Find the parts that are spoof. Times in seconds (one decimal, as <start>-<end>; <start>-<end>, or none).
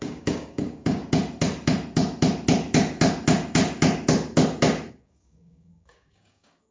0.0-1.0; 4.9-6.7